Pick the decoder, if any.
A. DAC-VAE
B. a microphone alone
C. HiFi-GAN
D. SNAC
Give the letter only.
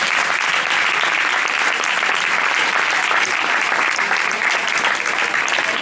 B